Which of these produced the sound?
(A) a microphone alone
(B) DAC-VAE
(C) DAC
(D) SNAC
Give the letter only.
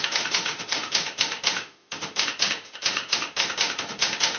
B